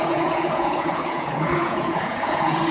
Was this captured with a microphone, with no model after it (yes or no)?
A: no